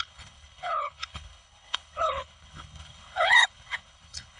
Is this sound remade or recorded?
remade